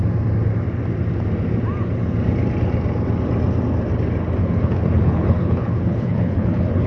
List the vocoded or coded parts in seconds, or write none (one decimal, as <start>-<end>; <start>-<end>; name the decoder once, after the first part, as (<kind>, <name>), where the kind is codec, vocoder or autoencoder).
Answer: 4.4-6.9 (codec, HILCodec)